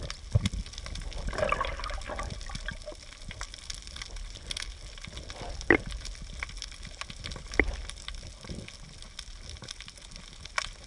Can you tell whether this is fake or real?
real